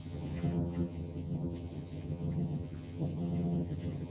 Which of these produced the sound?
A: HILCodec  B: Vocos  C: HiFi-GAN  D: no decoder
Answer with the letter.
C